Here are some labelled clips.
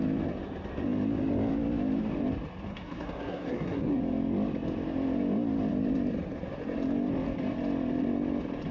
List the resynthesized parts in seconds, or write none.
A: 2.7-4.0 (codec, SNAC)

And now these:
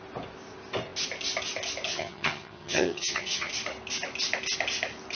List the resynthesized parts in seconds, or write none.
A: 1.9-3.5 (vocoder, HiFi-GAN)

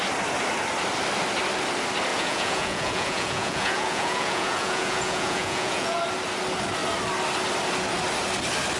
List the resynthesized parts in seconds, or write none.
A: 2.1-6.0 (vocoder, Vocos)

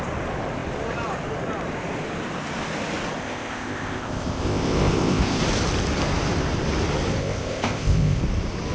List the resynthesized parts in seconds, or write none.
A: 3.2-5.4 (codec, ZipCodec); 7.2-8.2

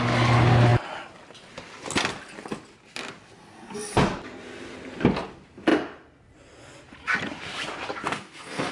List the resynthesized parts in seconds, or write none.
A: 8.1-8.7 (codec, SNAC)

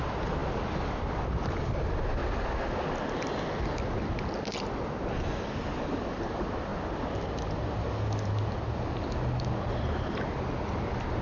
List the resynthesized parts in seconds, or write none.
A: none

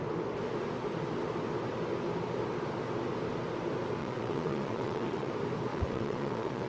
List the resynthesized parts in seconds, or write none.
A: 4.0-5.3 (vocoder, WaveNeXt); 5.7-6.7